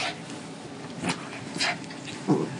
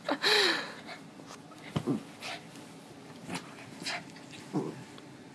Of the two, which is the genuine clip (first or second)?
first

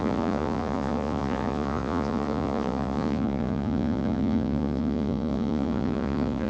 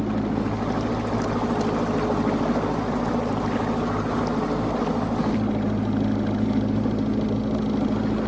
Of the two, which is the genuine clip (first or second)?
second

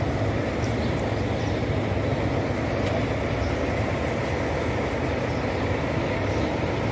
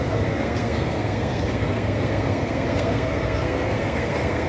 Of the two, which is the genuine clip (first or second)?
first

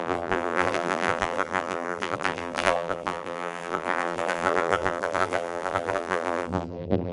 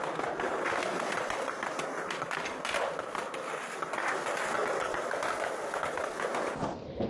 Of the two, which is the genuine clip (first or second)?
second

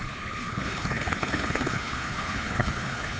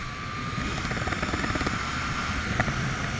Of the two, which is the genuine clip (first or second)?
second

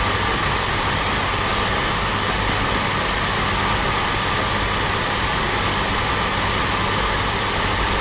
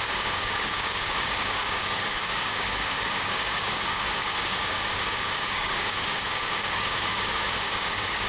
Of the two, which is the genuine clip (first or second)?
first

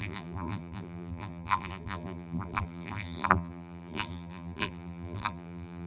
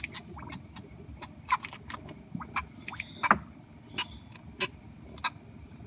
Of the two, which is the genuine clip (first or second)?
second